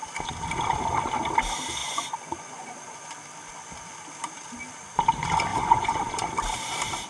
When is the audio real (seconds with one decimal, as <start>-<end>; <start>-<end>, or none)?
0.0-1.8; 3.1-5.5; 6.1-7.1